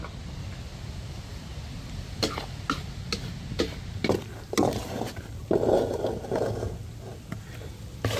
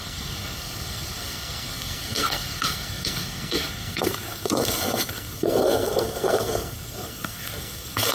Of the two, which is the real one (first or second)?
first